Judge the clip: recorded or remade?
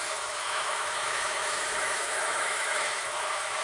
remade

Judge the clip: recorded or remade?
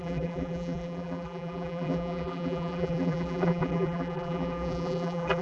remade